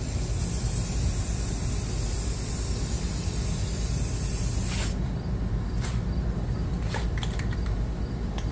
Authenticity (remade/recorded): recorded